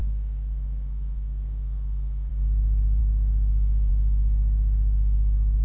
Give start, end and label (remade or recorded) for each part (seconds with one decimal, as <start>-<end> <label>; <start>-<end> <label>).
0.0-2.3 remade; 2.3-5.6 recorded

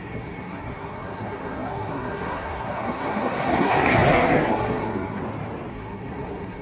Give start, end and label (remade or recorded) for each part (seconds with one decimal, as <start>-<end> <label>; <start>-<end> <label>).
0.0-5.2 remade; 5.2-5.7 recorded; 5.7-6.6 remade

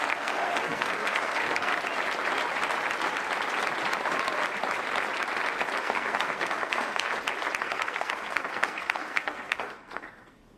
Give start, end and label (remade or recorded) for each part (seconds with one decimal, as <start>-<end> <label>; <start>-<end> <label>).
0.0-1.7 remade; 1.7-5.8 recorded; 5.8-7.1 remade; 7.1-7.6 recorded; 7.6-10.6 remade

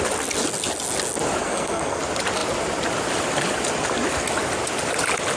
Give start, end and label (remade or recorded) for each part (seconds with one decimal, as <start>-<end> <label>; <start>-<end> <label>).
0.0-1.4 recorded; 1.4-2.0 remade; 2.0-5.4 recorded

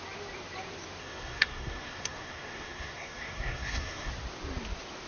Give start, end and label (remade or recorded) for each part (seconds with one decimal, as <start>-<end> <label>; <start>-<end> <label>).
0.0-1.0 recorded; 1.0-4.1 remade; 4.1-5.1 recorded